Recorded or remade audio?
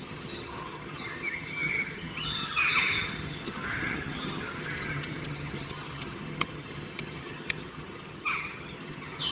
remade